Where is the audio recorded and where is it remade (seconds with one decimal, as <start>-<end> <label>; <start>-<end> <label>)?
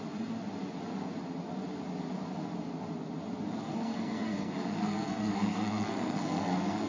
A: 0.0-3.7 recorded; 3.7-6.9 remade